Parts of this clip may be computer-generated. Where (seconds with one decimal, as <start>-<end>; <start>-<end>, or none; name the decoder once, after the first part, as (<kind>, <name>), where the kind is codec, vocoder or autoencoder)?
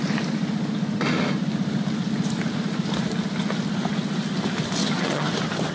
4.8-5.3 (vocoder, HiFi-GAN)